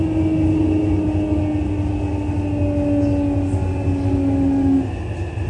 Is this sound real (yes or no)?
yes